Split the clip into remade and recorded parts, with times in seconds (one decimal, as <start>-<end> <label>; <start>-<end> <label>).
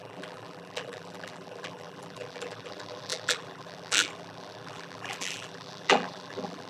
0.0-6.7 remade